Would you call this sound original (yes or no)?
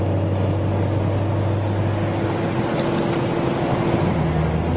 yes